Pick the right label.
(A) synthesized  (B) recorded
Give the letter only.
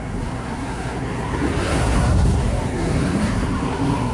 A